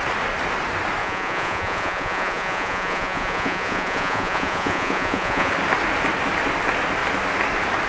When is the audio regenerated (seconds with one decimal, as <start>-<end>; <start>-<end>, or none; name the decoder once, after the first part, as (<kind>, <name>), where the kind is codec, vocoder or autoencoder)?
1.0-5.5 (vocoder, Vocos)

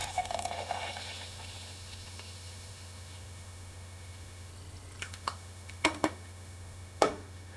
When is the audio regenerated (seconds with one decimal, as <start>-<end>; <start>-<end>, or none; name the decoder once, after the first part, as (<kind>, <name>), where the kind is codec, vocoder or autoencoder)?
0.0-4.5 (autoencoder, DAC-VAE); 5.0-7.6

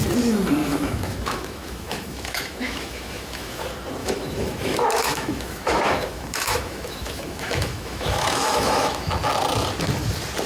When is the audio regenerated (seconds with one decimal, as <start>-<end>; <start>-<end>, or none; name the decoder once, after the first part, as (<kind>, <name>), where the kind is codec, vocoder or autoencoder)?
0.6-3.6 (autoencoder, DAC-VAE); 4.0-9.1

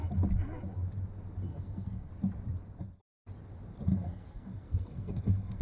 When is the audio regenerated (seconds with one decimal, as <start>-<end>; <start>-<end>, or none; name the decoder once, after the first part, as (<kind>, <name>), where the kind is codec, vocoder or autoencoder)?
1.5-2.1 (codec, SNAC); 3.9-5.6

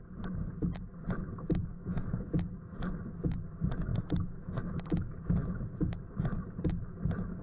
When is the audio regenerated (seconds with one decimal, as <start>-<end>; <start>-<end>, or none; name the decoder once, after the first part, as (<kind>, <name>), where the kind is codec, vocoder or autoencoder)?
1.6-2.3 (autoencoder, DAC-VAE); 3.9-4.9

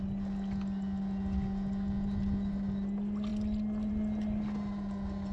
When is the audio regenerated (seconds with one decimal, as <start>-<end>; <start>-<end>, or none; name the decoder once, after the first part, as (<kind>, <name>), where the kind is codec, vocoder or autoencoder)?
none